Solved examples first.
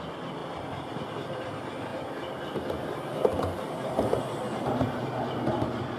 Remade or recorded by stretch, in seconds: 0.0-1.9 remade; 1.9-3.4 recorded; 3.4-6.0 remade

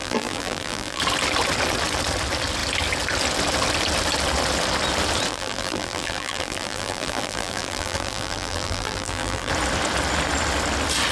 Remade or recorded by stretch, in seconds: 0.0-1.0 remade; 1.0-5.3 recorded; 5.3-9.5 remade; 9.5-11.1 recorded

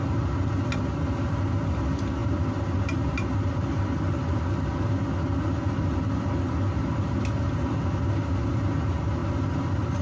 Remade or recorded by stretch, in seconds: 0.0-10.0 recorded

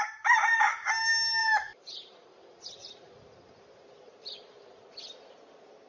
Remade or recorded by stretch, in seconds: 0.0-1.4 recorded; 1.4-4.9 remade; 4.9-5.9 recorded

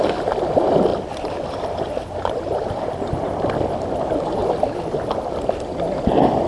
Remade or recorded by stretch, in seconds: 0.0-0.9 recorded; 0.9-3.5 remade; 3.5-4.4 recorded; 4.4-5.3 remade; 5.3-6.5 recorded